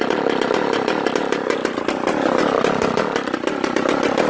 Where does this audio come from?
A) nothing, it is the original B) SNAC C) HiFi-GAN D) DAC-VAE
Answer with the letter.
A